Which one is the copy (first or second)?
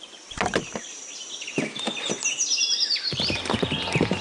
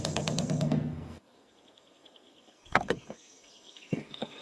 second